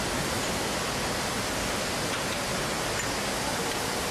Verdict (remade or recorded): recorded